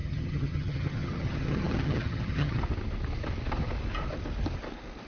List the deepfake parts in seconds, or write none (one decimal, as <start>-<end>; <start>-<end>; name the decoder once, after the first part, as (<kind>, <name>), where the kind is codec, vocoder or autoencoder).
0.0-2.6 (vocoder, HiFi-GAN)